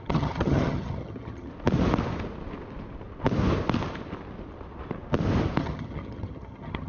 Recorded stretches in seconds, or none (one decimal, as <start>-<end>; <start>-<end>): 1.5-5.6